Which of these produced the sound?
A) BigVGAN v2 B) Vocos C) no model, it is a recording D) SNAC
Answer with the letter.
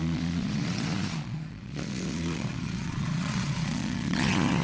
B